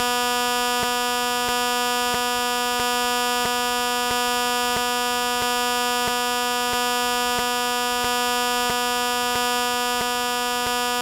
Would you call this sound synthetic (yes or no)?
no